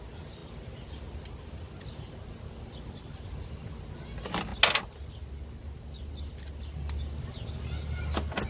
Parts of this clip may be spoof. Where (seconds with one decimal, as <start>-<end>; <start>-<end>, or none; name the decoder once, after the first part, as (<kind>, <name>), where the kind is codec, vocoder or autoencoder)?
none